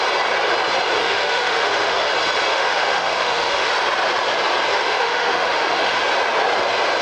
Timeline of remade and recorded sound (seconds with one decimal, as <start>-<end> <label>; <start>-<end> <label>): 0.0-1.0 recorded; 1.0-2.1 remade; 2.1-2.5 recorded; 2.5-3.7 remade; 3.7-4.7 recorded; 4.7-6.0 remade; 6.0-7.0 recorded